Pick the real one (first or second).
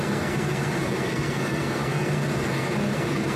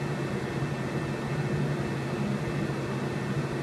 second